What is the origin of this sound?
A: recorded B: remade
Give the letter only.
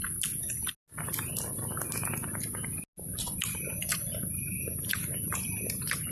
A